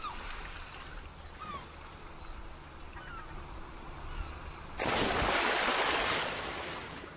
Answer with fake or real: real